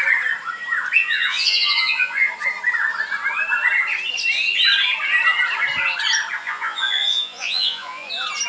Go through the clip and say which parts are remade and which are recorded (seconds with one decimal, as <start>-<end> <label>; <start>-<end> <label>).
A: 0.0-1.0 recorded; 1.0-2.3 remade; 2.3-6.4 recorded; 6.4-8.1 remade; 8.1-8.5 recorded